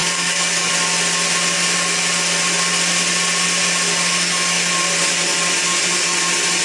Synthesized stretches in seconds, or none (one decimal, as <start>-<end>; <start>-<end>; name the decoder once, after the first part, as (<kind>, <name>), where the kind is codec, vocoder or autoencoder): 0.0-0.7 (codec, DAC)